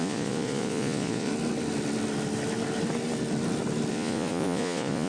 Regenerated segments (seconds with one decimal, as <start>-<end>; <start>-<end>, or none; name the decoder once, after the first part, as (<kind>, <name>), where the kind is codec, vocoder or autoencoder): 0.0-1.3 (vocoder, Vocos); 3.9-5.1